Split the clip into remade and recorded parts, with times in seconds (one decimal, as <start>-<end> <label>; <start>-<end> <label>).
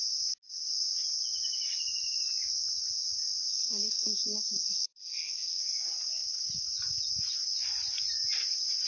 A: 0.0-3.5 recorded; 3.5-5.6 remade; 5.6-8.9 recorded